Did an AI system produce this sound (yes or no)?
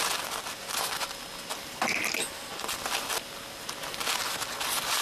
no